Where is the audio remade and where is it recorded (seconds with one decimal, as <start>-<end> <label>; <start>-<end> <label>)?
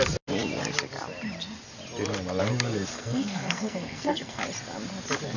0.0-2.9 recorded; 2.9-4.4 remade; 4.4-5.4 recorded